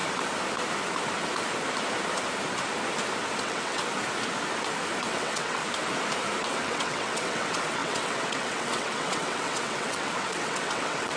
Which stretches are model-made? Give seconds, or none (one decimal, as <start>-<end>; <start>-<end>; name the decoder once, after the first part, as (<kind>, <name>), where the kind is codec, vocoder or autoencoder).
3.4-3.8 (vocoder, WaveNeXt); 5.0-5.6; 6.4-11.2